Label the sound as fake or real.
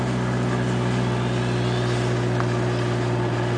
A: real